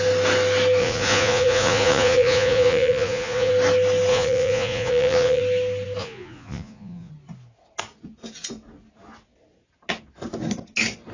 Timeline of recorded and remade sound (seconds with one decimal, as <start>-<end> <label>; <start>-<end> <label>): 0.0-0.8 recorded; 0.8-3.5 remade; 3.5-4.1 recorded; 4.1-5.4 remade; 5.4-6.0 recorded; 6.0-7.1 remade; 7.1-11.1 recorded